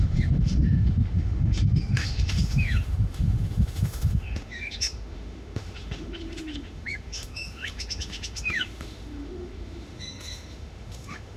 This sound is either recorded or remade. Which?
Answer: remade